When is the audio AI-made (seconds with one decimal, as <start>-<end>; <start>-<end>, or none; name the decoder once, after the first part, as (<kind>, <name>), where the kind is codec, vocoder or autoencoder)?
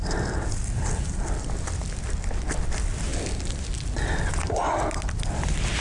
none